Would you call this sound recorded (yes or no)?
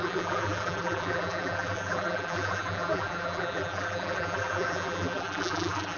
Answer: no